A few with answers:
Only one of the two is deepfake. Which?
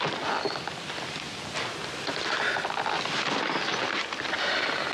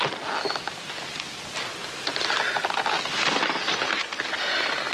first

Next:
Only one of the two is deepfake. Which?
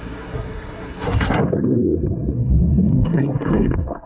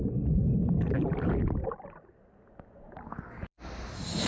first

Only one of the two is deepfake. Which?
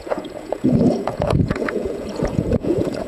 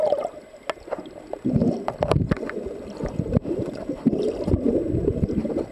first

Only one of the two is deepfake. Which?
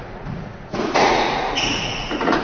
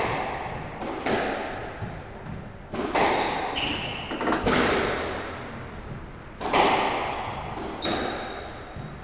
first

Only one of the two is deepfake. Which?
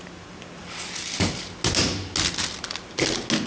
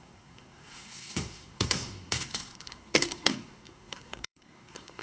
second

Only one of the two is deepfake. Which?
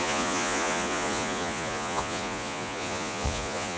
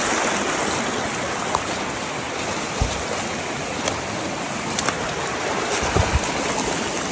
first